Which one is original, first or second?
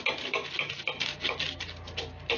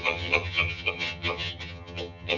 first